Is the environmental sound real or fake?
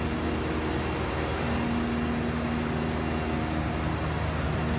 real